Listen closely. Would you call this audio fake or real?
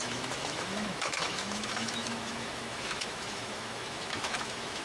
fake